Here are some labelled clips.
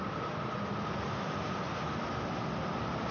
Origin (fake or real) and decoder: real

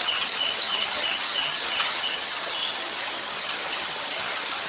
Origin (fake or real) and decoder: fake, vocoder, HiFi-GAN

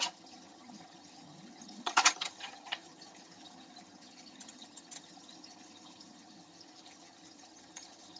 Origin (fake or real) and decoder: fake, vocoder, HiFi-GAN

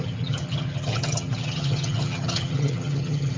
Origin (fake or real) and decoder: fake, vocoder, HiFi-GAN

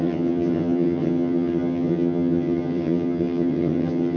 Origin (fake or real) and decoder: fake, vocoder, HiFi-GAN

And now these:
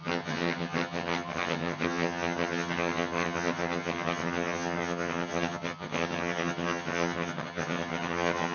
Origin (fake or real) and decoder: fake, vocoder, HiFi-GAN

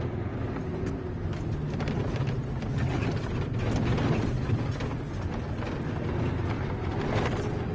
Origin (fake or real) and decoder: real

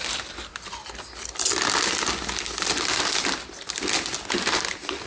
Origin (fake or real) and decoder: real